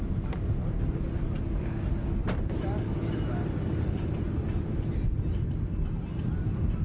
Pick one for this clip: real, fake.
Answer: real